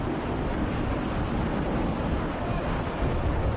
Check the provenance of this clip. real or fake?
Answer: real